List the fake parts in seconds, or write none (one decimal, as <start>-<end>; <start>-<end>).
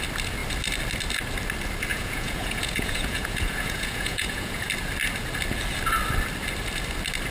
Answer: 1.9-4.7